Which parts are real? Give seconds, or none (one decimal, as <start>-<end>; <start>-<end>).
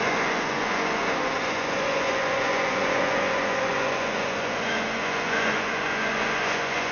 none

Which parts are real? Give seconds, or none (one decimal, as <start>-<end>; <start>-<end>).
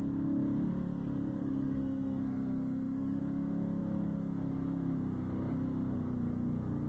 0.0-1.4; 3.2-6.9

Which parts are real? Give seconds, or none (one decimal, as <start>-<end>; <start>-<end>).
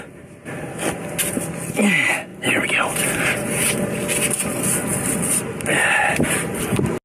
0.0-7.0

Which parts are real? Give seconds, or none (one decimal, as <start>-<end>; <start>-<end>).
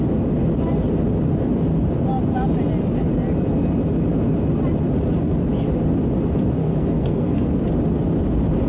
0.0-6.6; 7.6-8.7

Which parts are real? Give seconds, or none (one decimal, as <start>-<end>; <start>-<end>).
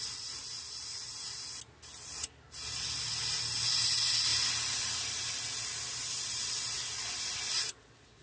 0.0-8.2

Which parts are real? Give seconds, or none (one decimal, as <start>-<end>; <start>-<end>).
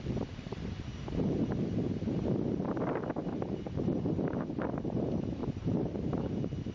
0.0-0.9; 1.5-5.4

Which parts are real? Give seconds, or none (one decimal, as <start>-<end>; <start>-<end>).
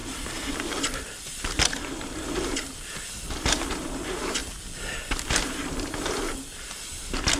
4.4-6.0